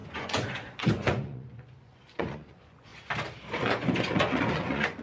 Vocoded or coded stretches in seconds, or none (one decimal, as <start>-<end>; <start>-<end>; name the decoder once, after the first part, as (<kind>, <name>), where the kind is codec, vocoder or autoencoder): 0.0-2.9 (vocoder, Vocos); 3.6-5.0